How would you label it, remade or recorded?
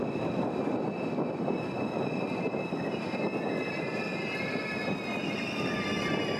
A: recorded